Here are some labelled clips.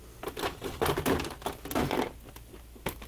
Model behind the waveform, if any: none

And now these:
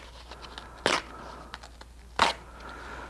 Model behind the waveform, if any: none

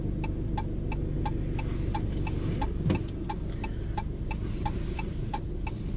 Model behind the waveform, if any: none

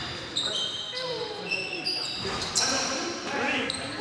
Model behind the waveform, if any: vocoder, BigVGAN v2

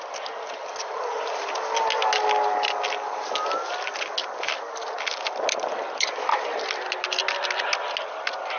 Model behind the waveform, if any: none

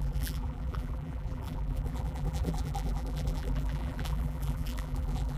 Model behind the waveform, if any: vocoder, BigVGAN v2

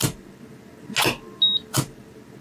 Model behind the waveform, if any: none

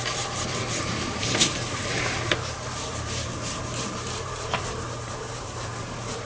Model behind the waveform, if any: vocoder, BigVGAN v2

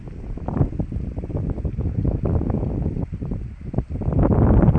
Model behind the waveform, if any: vocoder, BigVGAN v2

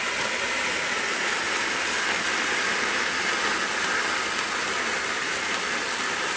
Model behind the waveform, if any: none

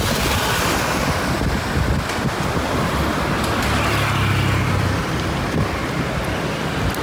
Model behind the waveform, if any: none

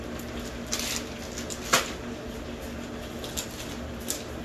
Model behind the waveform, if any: none